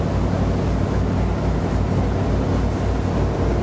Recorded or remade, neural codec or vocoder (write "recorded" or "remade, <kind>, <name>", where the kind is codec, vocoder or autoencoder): recorded